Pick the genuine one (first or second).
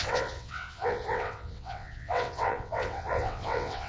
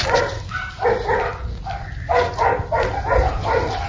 second